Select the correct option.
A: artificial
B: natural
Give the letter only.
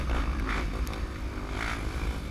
B